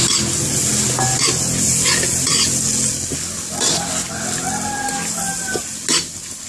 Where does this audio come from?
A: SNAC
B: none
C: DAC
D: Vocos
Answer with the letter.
B